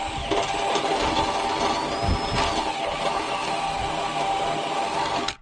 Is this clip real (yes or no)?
yes